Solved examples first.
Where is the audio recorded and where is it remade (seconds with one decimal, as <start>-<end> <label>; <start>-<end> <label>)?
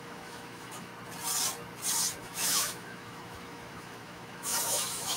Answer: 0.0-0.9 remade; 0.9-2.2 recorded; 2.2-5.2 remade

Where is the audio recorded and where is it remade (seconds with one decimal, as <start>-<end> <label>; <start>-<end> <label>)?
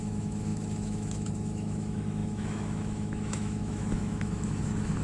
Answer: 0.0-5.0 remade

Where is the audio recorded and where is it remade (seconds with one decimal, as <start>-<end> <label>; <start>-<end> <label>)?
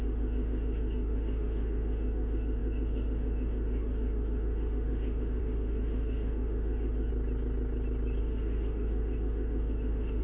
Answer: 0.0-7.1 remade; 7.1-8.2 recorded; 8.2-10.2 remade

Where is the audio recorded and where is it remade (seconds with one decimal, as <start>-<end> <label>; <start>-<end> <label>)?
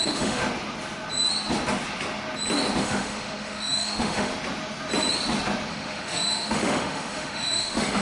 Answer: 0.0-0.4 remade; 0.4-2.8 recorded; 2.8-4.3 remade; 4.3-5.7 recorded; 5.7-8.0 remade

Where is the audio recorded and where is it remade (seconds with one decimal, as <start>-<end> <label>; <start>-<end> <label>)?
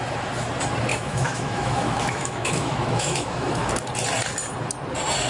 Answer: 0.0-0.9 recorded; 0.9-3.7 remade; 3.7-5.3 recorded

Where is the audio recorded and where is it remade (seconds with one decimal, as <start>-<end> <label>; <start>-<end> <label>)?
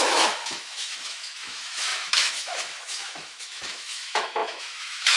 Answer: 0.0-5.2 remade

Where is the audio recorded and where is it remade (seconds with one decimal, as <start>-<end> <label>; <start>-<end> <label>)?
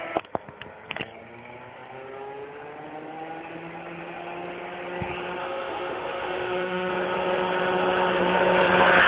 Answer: 0.0-5.4 recorded; 5.4-6.9 remade; 6.9-9.1 recorded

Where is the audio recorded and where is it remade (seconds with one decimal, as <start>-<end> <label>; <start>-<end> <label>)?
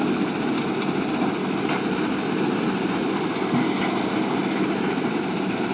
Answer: 0.0-5.7 recorded